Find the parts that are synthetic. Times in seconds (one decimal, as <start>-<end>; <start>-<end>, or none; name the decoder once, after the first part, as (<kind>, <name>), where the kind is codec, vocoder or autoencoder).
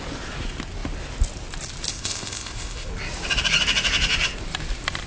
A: 1.9-2.9 (codec, ZipCodec)